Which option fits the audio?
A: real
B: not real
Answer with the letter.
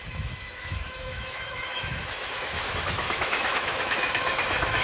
B